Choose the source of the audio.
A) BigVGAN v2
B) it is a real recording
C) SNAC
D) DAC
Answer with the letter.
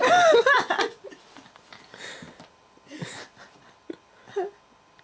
B